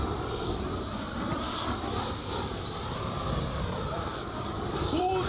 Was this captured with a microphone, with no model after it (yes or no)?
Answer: no